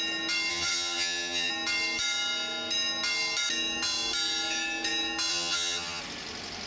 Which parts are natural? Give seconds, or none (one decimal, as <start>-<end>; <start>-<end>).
0.0-0.5; 1.5-5.3; 6.0-6.7

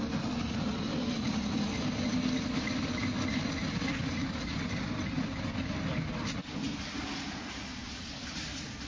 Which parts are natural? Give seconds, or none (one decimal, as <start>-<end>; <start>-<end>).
0.0-8.9

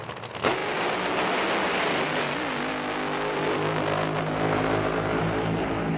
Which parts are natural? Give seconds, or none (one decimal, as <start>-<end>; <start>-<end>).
0.0-6.0

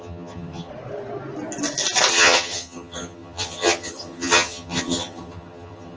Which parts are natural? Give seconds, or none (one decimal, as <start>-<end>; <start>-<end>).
0.7-2.1

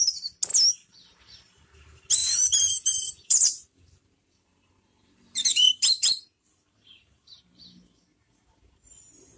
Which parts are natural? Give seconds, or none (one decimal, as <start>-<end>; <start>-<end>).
0.0-2.2; 7.4-9.4

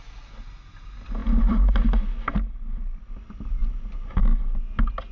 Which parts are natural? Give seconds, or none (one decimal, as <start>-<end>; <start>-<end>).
0.0-5.1

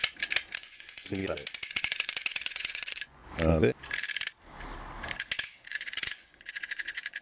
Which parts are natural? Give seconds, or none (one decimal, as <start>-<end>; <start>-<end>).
0.0-0.6; 1.2-1.7; 3.2-5.7